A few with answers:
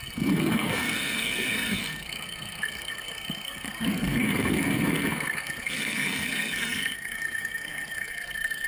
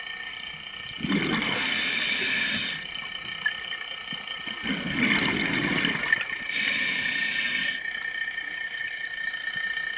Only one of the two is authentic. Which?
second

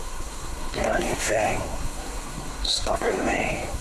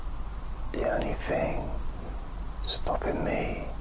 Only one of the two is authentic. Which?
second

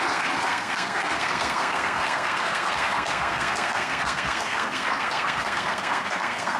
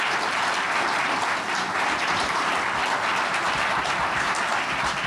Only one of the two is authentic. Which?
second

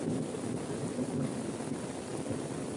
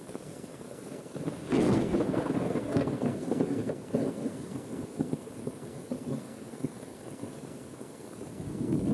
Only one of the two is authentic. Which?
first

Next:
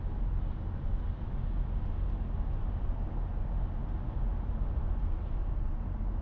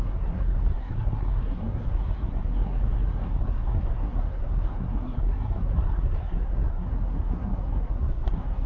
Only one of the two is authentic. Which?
first